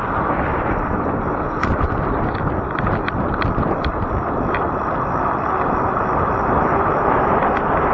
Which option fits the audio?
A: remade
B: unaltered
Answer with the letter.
A